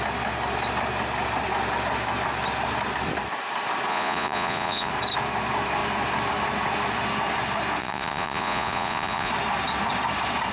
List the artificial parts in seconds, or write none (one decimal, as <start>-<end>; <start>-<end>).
3.9-4.9; 7.8-9.3